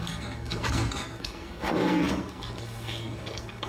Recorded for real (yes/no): no